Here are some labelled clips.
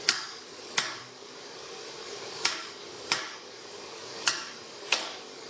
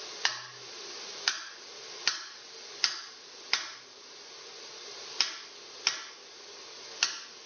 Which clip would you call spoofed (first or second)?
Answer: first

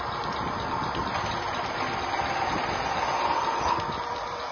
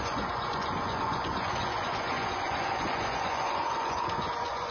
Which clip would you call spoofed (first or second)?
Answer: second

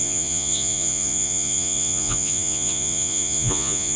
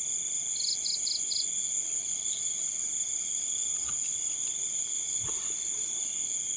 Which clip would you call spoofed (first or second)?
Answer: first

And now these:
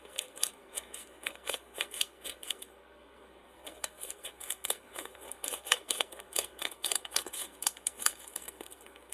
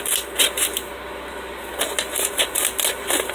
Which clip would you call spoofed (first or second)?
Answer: first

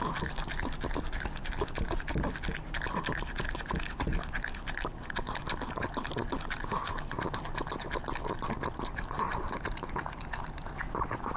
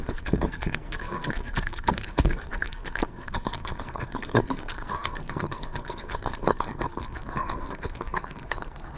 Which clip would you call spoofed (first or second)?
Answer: second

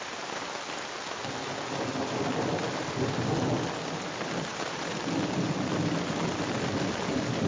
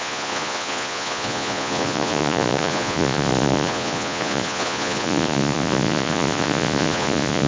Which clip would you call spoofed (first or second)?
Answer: second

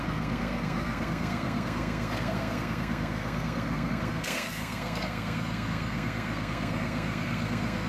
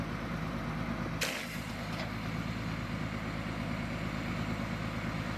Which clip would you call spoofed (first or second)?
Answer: first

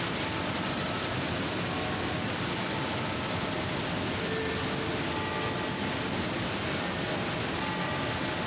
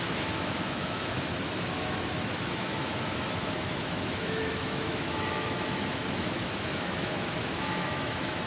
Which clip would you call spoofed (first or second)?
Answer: second